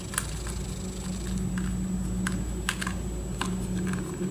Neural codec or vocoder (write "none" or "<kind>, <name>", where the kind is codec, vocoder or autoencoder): none